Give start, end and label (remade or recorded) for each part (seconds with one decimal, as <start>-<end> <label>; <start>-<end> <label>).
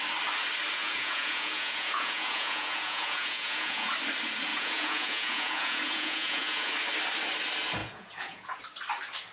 0.0-0.8 recorded; 0.8-3.9 remade; 3.9-4.5 recorded; 4.5-6.7 remade; 6.7-7.8 recorded; 7.8-8.6 remade; 8.6-9.3 recorded